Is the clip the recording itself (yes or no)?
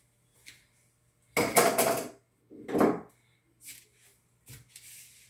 yes